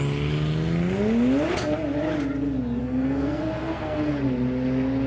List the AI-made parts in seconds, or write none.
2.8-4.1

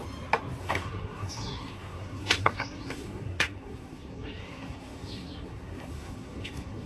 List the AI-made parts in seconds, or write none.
0.6-6.9

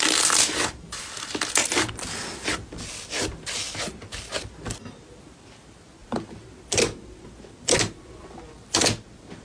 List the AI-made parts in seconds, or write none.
none

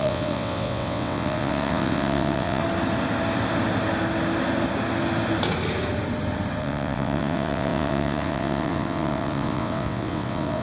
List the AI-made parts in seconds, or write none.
0.0-2.6; 6.6-10.6

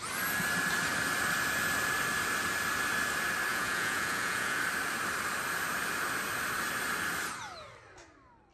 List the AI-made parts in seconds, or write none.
3.5-4.6